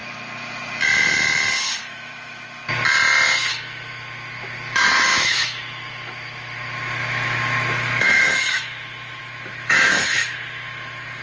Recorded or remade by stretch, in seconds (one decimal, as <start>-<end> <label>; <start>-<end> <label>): 0.0-1.5 recorded; 1.5-2.6 remade; 2.6-3.5 recorded; 3.5-11.2 remade

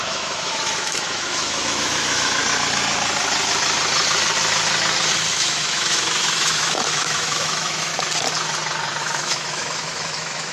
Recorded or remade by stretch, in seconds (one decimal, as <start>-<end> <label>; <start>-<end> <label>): 0.0-2.4 remade; 2.4-5.3 recorded; 5.3-7.9 remade; 7.9-9.0 recorded; 9.0-10.5 remade

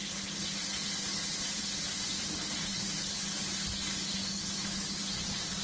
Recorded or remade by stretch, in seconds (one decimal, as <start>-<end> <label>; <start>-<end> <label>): 0.0-4.2 recorded; 4.2-4.9 remade; 4.9-5.6 recorded

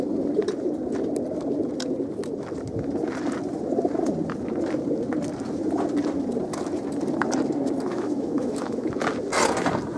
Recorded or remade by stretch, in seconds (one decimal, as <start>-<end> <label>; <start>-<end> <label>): 0.0-7.9 recorded; 7.9-8.9 remade; 8.9-10.0 recorded

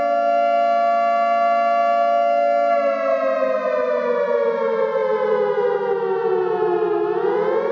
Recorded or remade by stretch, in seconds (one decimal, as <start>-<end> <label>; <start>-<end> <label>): 0.0-7.7 recorded

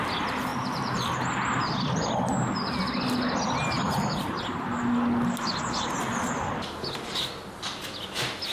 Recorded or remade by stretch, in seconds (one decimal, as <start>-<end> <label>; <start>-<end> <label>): 0.0-8.5 recorded

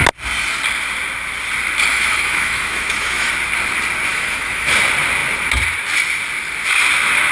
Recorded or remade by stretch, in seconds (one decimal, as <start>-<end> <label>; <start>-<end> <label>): 0.0-1.9 recorded; 1.9-3.3 remade; 3.3-4.1 recorded; 4.1-4.7 remade; 4.7-7.3 recorded

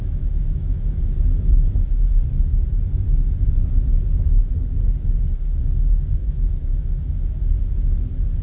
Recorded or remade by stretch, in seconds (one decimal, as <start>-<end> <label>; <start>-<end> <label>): 0.0-1.0 remade; 1.0-6.2 recorded; 6.2-7.4 remade; 7.4-8.4 recorded